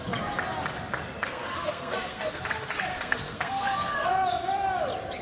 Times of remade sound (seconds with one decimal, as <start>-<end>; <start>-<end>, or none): 1.3-2.4; 2.9-4.1